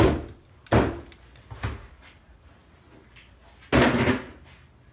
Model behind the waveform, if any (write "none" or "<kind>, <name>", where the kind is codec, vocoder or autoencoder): none